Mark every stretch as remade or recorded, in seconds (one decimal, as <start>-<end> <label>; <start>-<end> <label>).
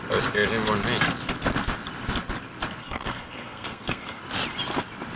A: 0.0-2.8 recorded; 2.8-4.2 remade; 4.2-5.2 recorded